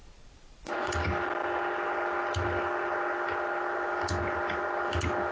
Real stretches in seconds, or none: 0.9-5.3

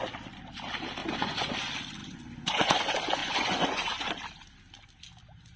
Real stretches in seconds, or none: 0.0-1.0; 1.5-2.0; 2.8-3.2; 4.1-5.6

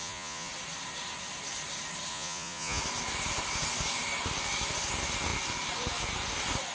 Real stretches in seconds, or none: 0.5-2.1; 2.8-6.7